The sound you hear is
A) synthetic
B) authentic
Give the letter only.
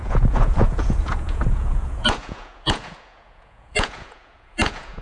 A